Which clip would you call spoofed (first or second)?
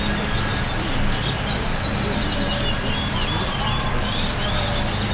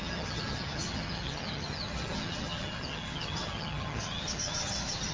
second